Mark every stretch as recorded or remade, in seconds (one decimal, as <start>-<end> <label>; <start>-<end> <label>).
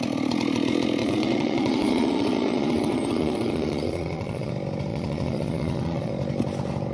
0.0-1.0 recorded; 1.0-4.5 remade; 4.5-4.9 recorded; 4.9-6.1 remade; 6.1-6.9 recorded